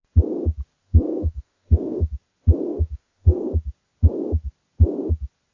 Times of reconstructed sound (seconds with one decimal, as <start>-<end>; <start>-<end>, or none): 0.8-2.1; 2.7-3.5